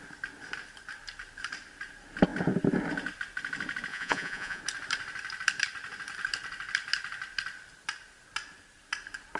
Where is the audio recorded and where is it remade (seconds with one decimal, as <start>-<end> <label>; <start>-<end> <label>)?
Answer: 0.0-3.9 recorded; 3.9-4.6 remade; 4.6-9.4 recorded